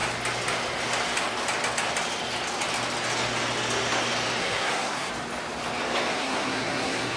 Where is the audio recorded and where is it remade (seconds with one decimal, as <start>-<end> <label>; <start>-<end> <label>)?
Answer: 0.0-4.4 recorded; 4.4-5.1 remade; 5.1-6.1 recorded; 6.1-7.2 remade